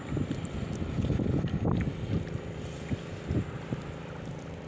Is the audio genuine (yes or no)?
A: yes